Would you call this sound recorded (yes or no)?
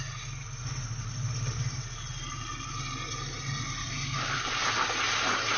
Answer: yes